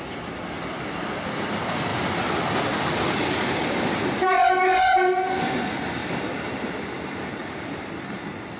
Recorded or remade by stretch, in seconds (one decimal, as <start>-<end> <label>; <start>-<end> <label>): 0.0-6.0 recorded; 6.0-8.2 remade; 8.2-8.6 recorded